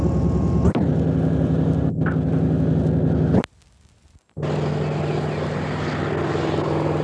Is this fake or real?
real